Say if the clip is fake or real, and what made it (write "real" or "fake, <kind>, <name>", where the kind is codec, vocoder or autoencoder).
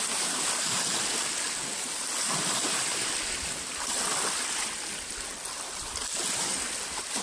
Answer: real